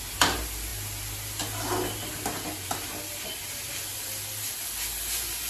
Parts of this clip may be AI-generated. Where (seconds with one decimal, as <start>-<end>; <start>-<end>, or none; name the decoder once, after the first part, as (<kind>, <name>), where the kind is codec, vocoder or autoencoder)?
none

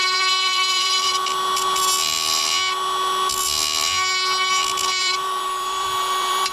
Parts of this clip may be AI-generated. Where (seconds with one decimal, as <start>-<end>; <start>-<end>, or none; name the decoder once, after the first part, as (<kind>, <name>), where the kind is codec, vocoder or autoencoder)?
0.0-1.1 (vocoder, BigVGAN v2); 5.0-6.5

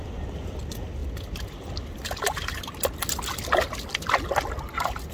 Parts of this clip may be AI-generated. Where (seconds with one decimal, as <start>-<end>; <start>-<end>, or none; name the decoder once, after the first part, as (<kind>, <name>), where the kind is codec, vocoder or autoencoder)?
none

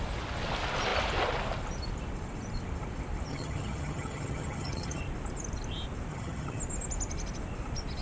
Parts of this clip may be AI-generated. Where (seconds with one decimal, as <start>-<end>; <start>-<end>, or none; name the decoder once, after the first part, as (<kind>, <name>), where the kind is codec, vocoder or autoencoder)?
3.3-5.0 (vocoder, HiFi-GAN); 6.1-6.6

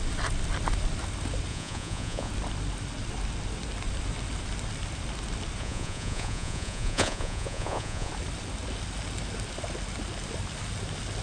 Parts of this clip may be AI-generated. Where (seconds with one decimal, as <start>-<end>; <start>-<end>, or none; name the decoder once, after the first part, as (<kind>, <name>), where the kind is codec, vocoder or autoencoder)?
1.5-2.3 (vocoder, Vocos); 5.6-8.1

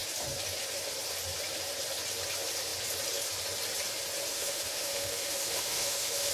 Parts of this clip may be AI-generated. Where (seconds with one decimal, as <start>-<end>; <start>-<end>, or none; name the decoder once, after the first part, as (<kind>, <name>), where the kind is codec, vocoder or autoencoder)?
4.3-6.3 (autoencoder, DAC-VAE)

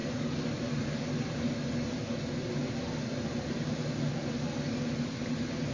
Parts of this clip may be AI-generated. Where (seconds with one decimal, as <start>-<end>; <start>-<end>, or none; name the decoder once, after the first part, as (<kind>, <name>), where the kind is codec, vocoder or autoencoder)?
none